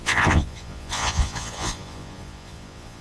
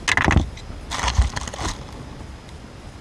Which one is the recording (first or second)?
second